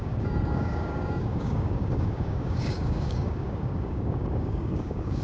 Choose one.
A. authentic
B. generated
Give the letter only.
B